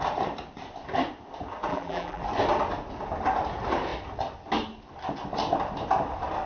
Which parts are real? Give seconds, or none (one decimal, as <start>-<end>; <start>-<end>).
0.0-1.7; 2.2-6.5